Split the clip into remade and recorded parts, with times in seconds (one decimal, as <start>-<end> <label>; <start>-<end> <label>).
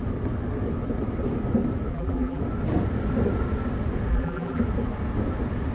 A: 0.0-1.9 recorded; 1.9-2.4 remade; 2.4-4.1 recorded; 4.1-4.6 remade; 4.6-5.7 recorded